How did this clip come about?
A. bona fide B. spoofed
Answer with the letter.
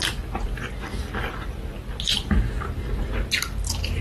A